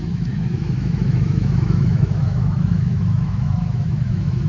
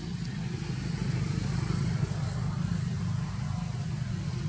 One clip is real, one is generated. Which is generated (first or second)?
first